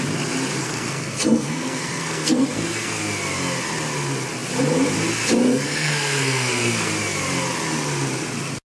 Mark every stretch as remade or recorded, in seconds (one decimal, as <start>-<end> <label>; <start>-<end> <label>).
0.0-0.6 recorded; 0.6-3.0 remade; 3.0-5.5 recorded; 5.5-6.9 remade; 6.9-8.8 recorded